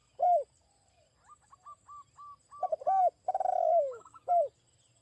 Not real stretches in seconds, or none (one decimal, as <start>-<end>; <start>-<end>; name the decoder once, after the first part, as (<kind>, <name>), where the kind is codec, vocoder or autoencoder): 3.5-4.3 (autoencoder, DAC-VAE)